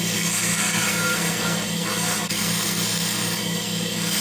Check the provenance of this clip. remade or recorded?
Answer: remade